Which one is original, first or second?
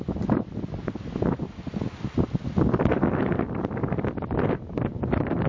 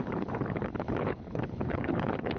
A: first